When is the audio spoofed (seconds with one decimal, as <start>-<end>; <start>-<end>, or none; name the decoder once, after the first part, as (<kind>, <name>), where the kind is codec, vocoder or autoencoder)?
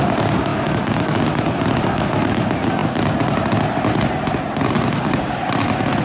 none